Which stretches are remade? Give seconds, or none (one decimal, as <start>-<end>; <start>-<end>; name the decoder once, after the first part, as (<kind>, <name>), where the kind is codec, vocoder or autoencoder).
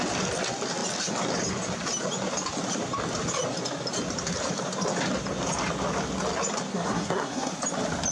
6.7-7.5 (codec, SNAC)